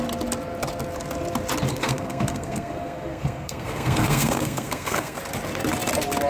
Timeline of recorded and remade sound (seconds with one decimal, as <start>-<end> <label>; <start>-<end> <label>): 0.0-1.7 recorded; 1.7-5.2 remade; 5.2-6.3 recorded